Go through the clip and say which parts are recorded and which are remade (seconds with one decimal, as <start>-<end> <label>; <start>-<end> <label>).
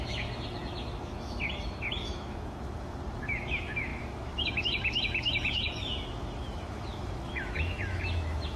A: 0.0-8.6 remade